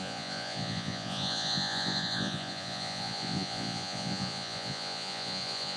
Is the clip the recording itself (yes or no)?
no